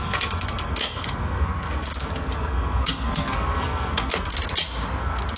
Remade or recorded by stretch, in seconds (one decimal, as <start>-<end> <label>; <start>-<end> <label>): 0.0-4.3 remade; 4.3-5.0 recorded; 5.0-5.4 remade